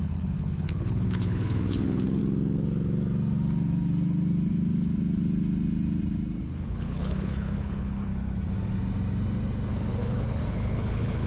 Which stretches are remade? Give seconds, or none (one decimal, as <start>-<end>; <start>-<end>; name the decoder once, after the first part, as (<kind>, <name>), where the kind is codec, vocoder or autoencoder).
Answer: 0.0-2.2 (codec, HILCodec); 6.4-8.1; 9.7-11.3